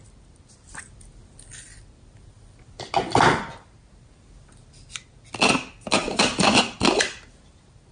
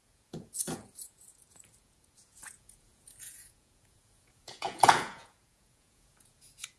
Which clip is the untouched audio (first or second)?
first